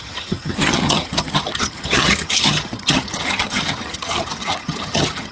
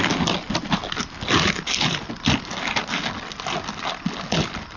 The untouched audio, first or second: second